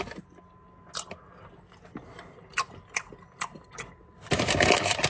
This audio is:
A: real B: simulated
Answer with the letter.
A